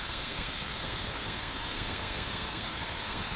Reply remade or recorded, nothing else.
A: remade